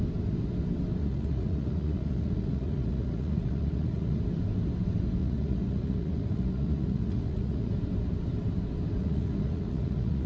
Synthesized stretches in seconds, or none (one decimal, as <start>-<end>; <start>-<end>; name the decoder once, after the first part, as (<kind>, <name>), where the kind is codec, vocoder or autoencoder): 1.0-4.2 (vocoder, Vocos); 5.2-7.7; 9.0-10.3